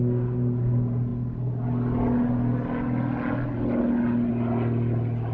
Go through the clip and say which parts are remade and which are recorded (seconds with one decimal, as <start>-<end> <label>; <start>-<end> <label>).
0.0-5.3 recorded